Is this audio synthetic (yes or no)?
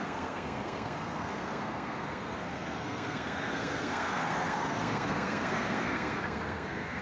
yes